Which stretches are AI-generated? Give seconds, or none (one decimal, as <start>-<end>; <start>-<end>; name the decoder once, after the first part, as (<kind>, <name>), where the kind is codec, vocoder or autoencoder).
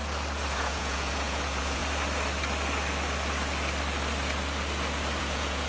0.5-1.8 (vocoder, Vocos); 5.2-5.7